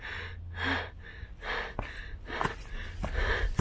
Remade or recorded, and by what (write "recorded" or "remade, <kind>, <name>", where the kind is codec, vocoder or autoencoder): recorded